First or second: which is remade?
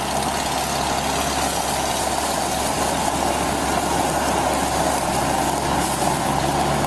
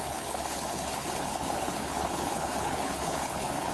second